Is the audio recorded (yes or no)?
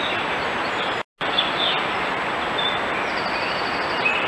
yes